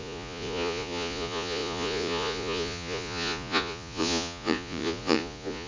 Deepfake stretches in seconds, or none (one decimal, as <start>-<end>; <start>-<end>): 0.0-5.7